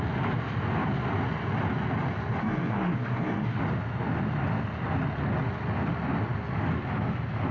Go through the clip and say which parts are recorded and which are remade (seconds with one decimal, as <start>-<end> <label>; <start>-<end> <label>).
0.0-2.4 recorded; 2.4-3.6 remade; 3.6-7.5 recorded